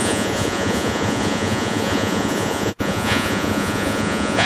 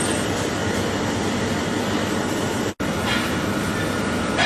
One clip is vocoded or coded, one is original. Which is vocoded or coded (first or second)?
first